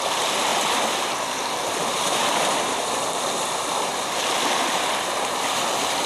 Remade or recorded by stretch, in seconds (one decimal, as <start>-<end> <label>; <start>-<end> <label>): 0.0-0.5 recorded; 0.5-3.5 remade; 3.5-3.9 recorded; 3.9-6.1 remade